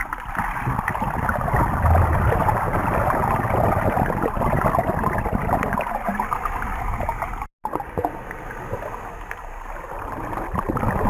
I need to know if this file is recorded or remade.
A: recorded